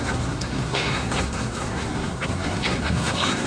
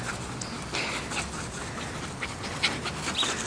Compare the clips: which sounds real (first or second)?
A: second